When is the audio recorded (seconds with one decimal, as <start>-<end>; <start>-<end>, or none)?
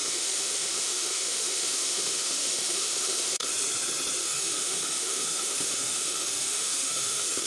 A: 3.5-4.2